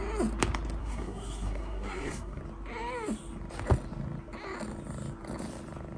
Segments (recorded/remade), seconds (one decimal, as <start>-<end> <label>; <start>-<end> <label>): 0.0-0.8 recorded; 0.8-2.4 remade; 2.4-6.0 recorded